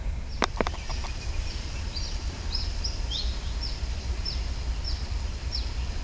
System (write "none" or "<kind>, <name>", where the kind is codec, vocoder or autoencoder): none